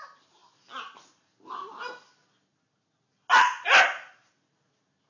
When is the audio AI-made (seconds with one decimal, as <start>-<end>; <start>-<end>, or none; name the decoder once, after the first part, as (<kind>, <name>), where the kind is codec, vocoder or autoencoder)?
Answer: none